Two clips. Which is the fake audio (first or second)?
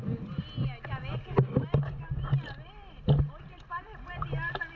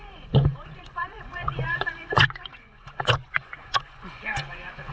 second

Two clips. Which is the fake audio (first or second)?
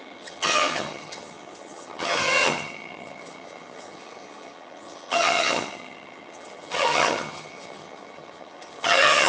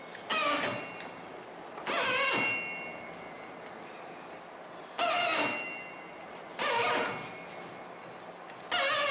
first